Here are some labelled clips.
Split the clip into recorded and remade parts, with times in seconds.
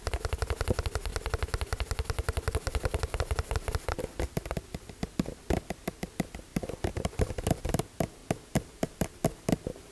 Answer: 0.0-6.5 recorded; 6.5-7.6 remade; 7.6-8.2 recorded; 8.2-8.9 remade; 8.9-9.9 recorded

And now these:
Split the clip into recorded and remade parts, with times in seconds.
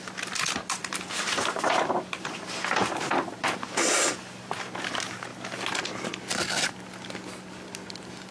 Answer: 0.0-0.8 recorded; 0.8-3.7 remade; 3.7-8.3 recorded